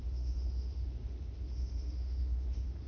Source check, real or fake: fake